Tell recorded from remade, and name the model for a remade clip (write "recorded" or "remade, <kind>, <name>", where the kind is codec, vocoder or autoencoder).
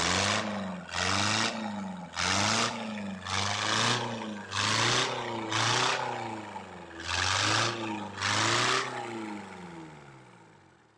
recorded